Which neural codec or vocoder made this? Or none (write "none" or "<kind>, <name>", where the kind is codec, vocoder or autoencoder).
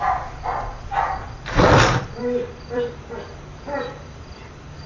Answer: vocoder, BigVGAN v2